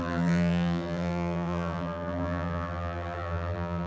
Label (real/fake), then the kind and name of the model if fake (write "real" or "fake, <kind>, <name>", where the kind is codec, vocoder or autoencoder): fake, vocoder, BigVGAN v2